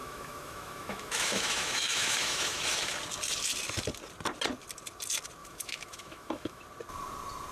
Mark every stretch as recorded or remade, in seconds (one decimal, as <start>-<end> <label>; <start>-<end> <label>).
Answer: 0.0-3.0 remade; 3.0-5.4 recorded; 5.4-6.6 remade; 6.6-7.5 recorded